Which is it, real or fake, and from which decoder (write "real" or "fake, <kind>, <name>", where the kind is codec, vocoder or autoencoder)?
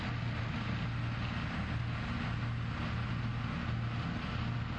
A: real